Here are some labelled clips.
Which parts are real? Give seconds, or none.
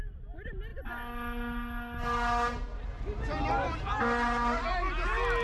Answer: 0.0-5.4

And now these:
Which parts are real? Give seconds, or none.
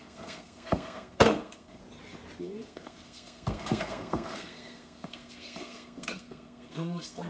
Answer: 1.8-2.4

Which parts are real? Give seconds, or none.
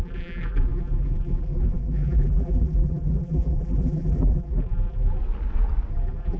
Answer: 5.2-5.9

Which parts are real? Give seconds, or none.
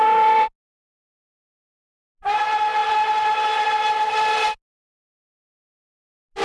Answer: 0.0-6.4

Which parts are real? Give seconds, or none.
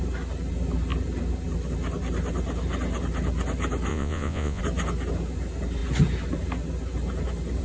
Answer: 0.0-3.9; 4.6-7.6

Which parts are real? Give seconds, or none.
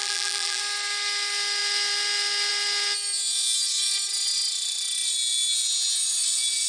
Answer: 0.6-6.7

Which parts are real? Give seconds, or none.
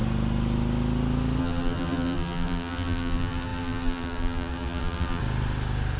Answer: 0.0-1.4; 5.2-6.0